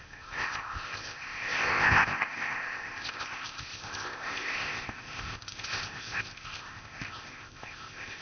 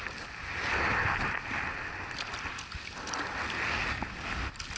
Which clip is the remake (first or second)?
first